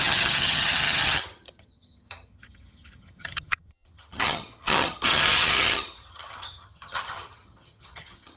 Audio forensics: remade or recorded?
remade